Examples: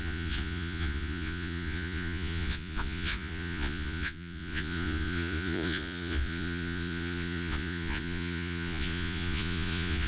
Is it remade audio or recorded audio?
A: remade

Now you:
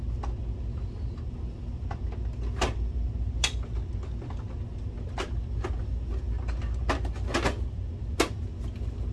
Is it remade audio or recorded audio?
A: recorded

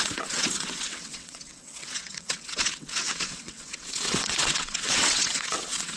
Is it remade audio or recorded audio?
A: remade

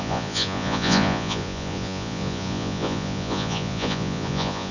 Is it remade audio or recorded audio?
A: remade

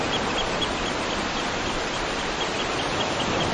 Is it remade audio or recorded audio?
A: recorded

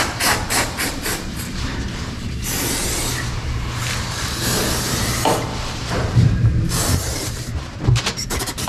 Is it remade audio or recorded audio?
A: remade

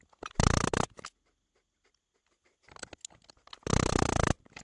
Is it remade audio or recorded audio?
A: recorded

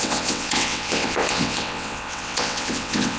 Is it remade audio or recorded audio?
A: remade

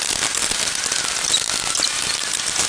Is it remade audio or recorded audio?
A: recorded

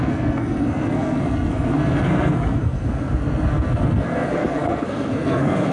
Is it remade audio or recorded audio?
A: remade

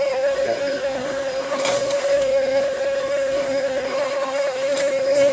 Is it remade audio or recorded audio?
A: remade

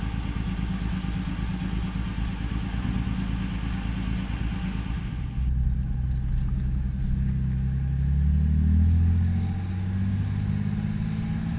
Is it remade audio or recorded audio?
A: recorded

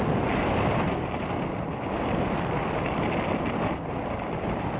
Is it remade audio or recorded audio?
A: recorded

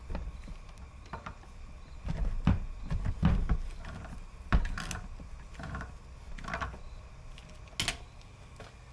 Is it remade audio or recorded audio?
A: recorded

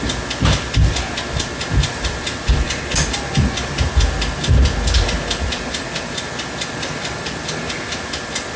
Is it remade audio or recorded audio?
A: recorded